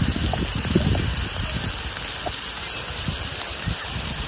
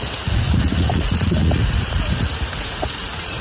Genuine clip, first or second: first